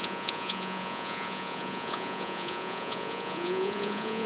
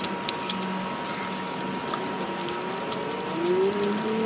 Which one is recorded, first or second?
second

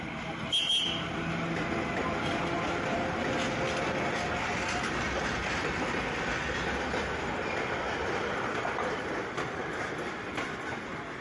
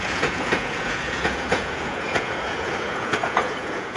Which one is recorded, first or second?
first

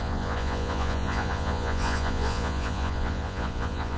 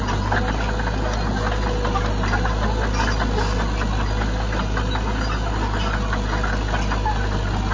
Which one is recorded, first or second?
second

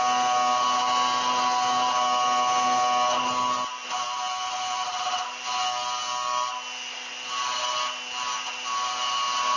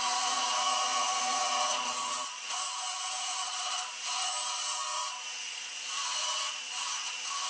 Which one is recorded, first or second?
first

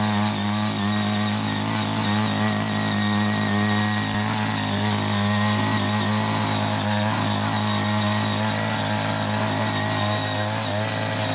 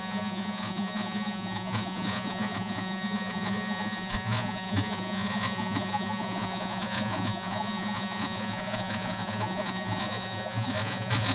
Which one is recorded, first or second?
first